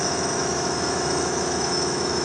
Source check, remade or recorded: remade